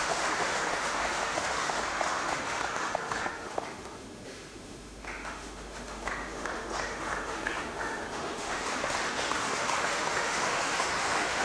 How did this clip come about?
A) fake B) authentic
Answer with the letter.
A